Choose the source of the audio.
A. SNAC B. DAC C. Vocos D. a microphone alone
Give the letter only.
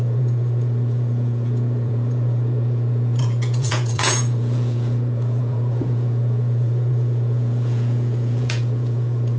C